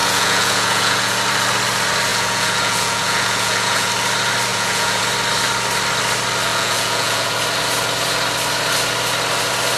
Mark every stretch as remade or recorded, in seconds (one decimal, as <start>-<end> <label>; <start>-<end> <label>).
0.0-1.2 remade; 1.2-2.1 recorded; 2.1-3.9 remade; 3.9-4.5 recorded; 4.5-5.0 remade; 5.0-6.5 recorded; 6.5-7.4 remade; 7.4-9.8 recorded